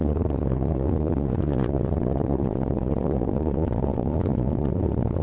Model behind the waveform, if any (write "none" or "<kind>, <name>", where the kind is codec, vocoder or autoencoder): vocoder, Vocos